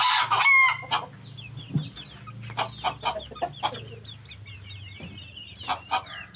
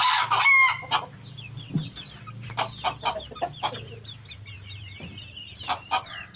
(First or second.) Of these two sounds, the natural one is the first